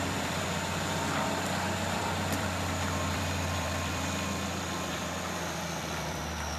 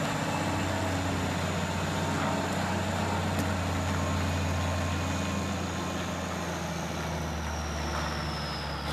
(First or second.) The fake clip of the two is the first